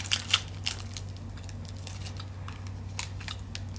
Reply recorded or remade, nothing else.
recorded